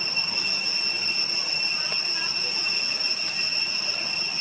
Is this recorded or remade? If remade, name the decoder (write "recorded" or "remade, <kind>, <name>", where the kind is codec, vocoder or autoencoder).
recorded